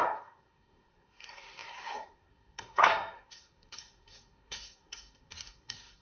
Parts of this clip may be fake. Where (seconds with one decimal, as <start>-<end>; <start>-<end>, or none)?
0.0-6.0